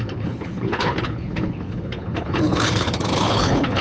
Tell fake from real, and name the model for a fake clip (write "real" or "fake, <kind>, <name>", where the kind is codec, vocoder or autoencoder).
fake, codec, HILCodec